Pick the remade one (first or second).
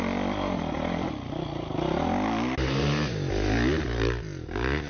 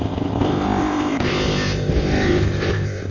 second